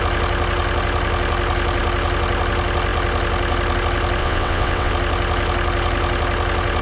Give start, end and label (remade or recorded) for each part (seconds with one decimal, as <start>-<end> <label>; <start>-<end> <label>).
0.0-4.2 recorded; 4.2-4.9 remade; 4.9-6.8 recorded